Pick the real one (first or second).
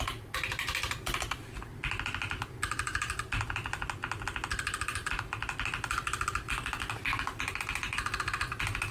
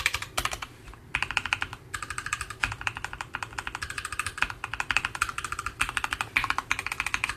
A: first